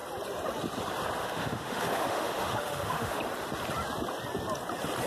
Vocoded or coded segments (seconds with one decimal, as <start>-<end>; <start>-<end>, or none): 1.2-3.2